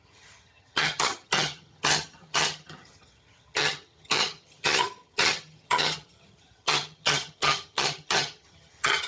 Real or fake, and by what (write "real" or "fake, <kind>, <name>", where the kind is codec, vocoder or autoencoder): fake, vocoder, HiFi-GAN